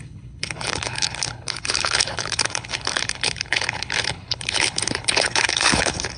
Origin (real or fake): fake